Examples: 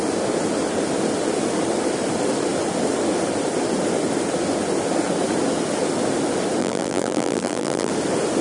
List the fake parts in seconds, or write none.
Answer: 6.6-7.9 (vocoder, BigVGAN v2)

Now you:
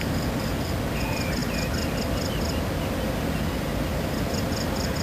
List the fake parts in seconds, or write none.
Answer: none

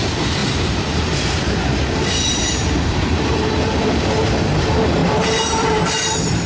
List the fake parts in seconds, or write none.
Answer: 0.4-1.0 (vocoder, BigVGAN v2); 1.8-3.7; 5.0-5.8

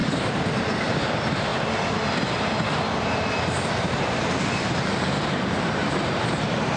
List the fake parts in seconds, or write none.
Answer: 0.0-1.5 (vocoder, BigVGAN v2); 4.5-6.8